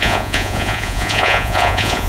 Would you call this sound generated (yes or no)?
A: yes